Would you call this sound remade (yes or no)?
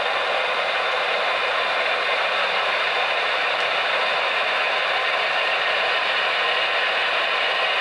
yes